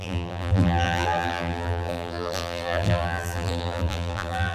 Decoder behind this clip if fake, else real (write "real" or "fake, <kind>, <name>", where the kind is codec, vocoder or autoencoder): fake, vocoder, BigVGAN v2